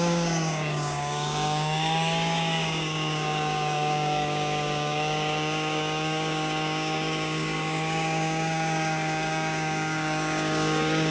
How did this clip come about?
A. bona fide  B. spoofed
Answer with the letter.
B